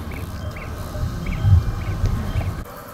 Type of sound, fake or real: real